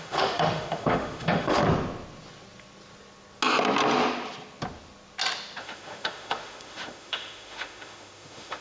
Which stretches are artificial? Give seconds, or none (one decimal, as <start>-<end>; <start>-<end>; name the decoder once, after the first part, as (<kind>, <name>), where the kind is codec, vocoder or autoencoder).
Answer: 0.0-1.6 (autoencoder, DAC-VAE); 5.6-8.6